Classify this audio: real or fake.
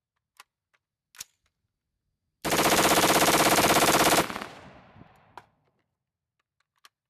real